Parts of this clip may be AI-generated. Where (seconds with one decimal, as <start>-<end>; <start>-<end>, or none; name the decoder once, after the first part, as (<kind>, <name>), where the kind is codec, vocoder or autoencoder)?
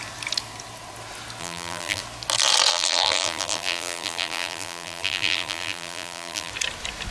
1.4-2.0 (vocoder, BigVGAN v2); 2.7-6.5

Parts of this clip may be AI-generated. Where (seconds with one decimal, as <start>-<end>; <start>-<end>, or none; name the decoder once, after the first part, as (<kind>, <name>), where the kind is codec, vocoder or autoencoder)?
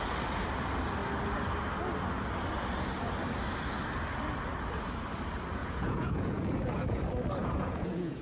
5.6-7.0 (vocoder, Vocos); 7.4-8.2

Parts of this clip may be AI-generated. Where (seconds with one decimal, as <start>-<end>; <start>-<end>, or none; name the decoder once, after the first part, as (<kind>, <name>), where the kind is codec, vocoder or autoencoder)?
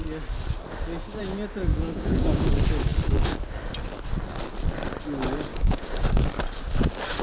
1.7-2.5 (codec, DAC); 5.5-6.2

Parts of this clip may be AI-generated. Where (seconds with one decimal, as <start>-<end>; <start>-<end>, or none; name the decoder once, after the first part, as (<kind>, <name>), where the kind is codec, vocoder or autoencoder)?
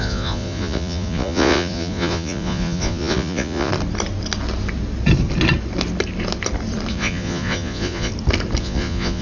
0.0-3.7 (vocoder, Vocos); 6.9-8.1; 8.6-9.2